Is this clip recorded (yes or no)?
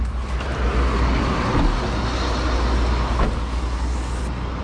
yes